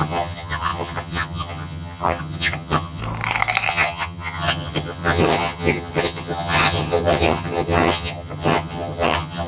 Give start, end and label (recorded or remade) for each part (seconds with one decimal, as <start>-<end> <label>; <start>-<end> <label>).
0.0-3.0 remade; 3.0-3.7 recorded; 3.7-9.5 remade